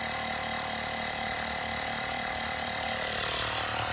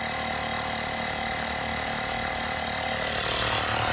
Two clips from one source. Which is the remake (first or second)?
first